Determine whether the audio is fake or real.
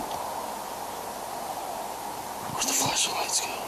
real